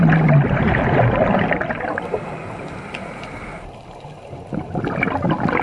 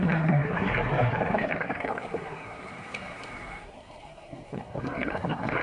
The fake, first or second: second